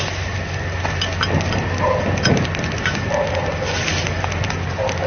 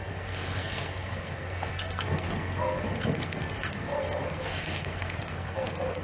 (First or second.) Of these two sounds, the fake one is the second